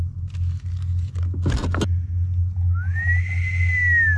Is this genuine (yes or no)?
yes